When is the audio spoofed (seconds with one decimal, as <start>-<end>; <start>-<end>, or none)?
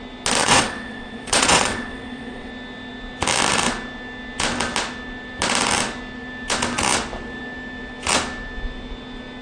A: 0.4-2.5